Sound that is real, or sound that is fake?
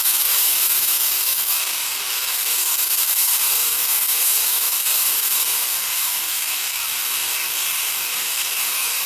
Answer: fake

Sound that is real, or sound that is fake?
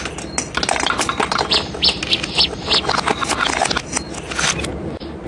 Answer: real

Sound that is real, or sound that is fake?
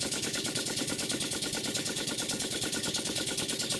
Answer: fake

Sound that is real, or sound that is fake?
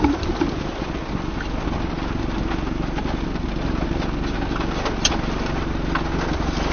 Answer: real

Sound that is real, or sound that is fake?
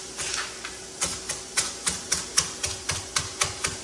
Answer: real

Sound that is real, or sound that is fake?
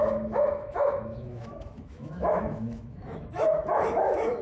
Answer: fake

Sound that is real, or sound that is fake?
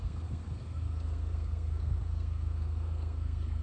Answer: fake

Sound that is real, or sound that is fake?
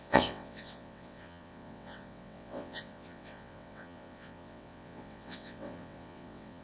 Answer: fake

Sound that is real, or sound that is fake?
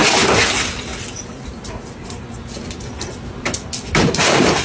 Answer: real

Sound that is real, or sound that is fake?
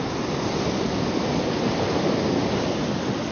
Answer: real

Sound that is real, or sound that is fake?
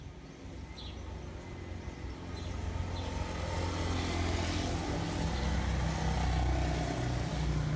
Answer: real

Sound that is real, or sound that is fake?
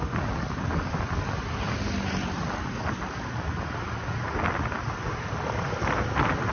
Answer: real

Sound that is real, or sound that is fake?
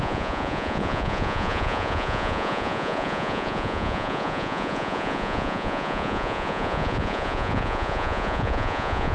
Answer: fake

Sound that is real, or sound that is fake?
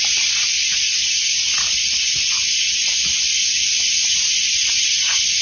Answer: real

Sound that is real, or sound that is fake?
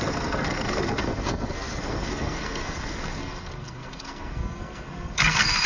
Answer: fake